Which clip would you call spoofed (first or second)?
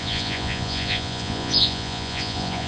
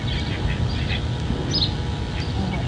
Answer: first